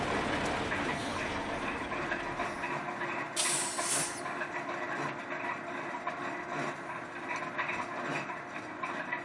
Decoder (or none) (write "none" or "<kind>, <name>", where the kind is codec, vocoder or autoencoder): none